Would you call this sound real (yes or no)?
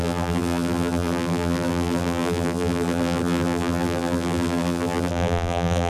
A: no